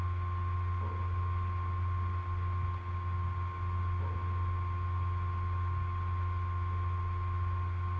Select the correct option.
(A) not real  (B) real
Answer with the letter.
B